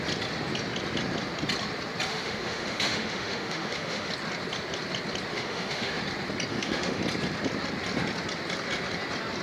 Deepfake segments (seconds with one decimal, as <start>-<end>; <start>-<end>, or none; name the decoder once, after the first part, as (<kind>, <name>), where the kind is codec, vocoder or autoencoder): 2.1-4.1 (autoencoder, DAC-VAE); 5.3-6.0; 6.5-7.0

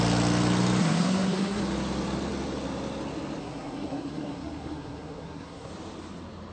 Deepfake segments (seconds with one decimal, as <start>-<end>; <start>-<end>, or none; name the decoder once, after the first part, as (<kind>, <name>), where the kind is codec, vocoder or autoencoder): 0.8-1.6 (codec, SNAC); 3.4-5.7

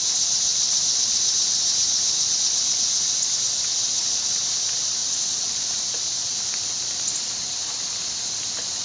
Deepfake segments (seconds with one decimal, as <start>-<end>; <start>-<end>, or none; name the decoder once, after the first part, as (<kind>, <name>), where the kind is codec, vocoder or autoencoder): 0.5-1.2 (vocoder, BigVGAN v2); 5.0-6.3

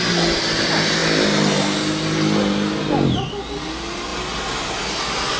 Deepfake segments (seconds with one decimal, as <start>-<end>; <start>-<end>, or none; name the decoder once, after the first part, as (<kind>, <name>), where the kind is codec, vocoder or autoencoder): none

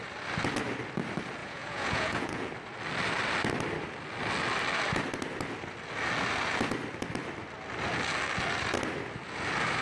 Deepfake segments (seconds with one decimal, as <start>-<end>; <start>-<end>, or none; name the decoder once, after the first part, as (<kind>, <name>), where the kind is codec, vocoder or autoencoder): 1.4-2.5 (vocoder, Vocos)